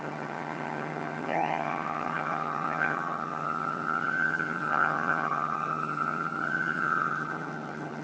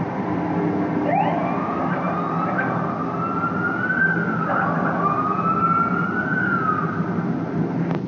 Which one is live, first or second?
second